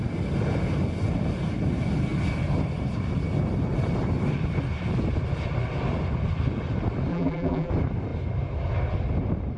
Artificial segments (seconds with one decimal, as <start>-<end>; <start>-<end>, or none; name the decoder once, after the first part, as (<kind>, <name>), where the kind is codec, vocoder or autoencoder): 7.1-7.7 (vocoder, BigVGAN v2)